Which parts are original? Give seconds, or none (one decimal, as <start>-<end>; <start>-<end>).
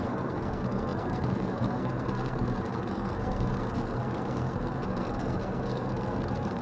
none